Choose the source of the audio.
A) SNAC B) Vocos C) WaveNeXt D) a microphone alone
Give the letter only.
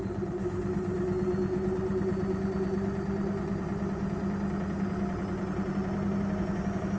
D